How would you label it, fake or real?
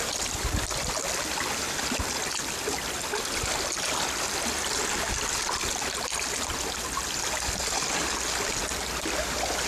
real